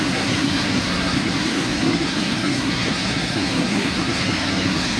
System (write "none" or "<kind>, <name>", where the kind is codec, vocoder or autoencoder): codec, SNAC